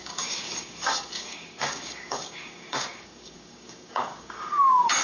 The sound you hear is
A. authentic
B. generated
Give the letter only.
B